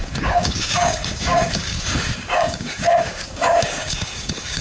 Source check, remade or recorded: remade